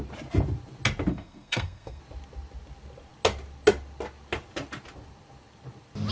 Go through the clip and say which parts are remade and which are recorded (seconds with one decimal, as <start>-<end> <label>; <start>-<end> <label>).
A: 0.0-1.1 recorded; 1.1-2.0 remade; 2.0-6.1 recorded

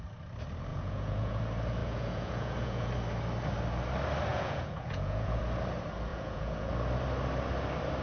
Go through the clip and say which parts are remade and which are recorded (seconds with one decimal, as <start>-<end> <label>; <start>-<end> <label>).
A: 0.0-0.7 recorded; 0.7-1.4 remade; 1.4-1.8 recorded; 1.8-2.9 remade; 2.9-4.3 recorded; 4.3-5.4 remade; 5.4-6.1 recorded; 6.1-6.7 remade; 6.7-8.0 recorded

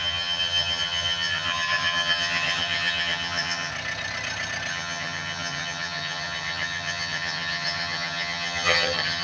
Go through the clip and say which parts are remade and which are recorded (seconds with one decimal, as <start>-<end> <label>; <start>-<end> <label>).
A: 0.0-3.7 remade; 3.7-4.7 recorded; 4.7-9.2 remade